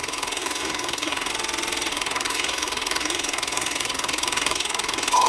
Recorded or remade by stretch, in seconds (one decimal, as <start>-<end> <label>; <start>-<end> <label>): 0.0-1.3 remade; 1.3-1.9 recorded; 1.9-5.3 remade